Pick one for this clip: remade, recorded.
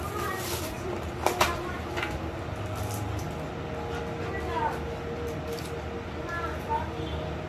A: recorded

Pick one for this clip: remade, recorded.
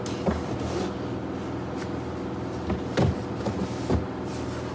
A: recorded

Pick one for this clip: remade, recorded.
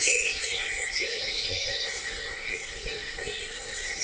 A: remade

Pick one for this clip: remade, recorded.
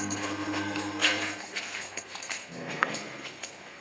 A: remade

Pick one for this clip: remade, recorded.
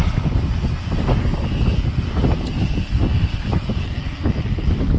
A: recorded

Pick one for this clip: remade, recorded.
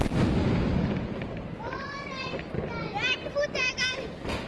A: recorded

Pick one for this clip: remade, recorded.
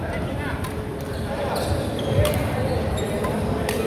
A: recorded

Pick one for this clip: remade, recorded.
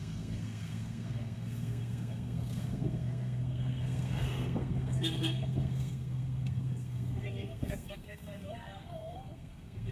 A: remade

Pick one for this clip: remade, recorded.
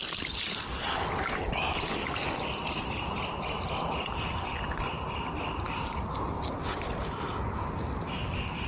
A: recorded